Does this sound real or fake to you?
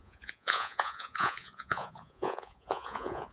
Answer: fake